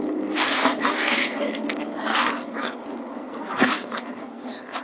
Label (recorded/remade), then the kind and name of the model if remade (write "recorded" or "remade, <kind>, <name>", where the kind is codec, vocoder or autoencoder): remade, codec, SNAC